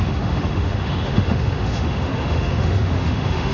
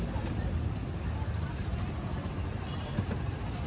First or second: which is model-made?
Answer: first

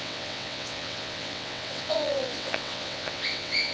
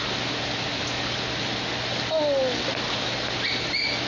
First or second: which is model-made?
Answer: first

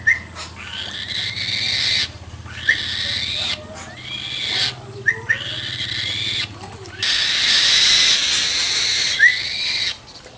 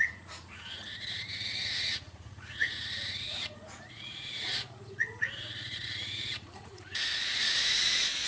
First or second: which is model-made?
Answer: second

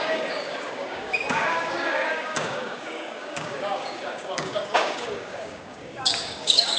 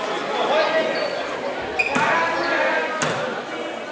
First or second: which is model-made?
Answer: first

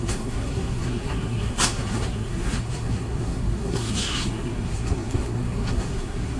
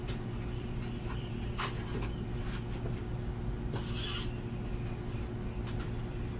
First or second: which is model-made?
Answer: first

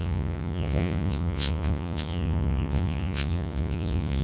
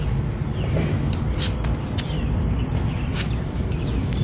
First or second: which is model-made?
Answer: first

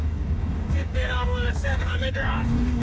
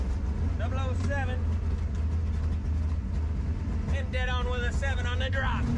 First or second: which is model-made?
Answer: first